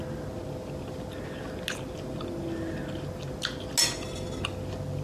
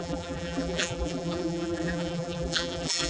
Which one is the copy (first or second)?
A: second